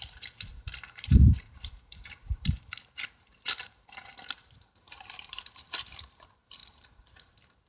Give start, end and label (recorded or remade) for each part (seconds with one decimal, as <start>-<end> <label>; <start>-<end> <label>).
0.0-7.7 remade